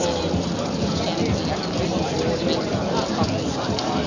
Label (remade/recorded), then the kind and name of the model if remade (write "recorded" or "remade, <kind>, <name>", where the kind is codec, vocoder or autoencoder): recorded